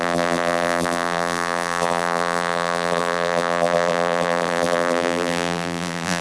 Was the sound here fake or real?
fake